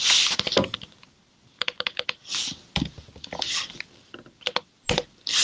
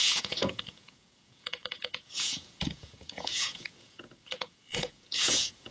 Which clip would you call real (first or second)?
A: first